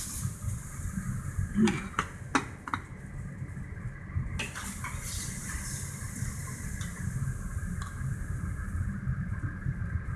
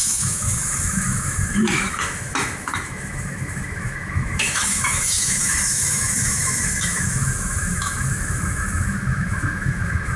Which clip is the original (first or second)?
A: first